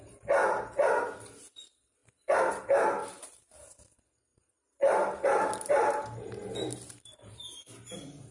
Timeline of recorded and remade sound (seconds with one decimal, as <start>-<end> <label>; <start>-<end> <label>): 0.0-3.0 recorded; 3.0-3.6 remade; 3.6-4.3 recorded; 4.3-8.3 remade